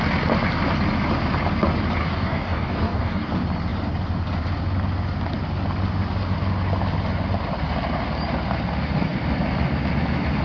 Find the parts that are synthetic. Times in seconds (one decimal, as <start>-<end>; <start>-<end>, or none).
2.0-3.3